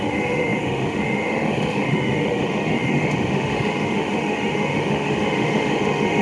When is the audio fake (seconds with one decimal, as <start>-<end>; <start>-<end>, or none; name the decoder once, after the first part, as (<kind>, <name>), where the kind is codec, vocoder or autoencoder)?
0.0-6.2 (autoencoder, DAC-VAE)